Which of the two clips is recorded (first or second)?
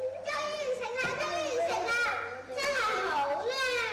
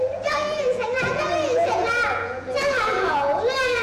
first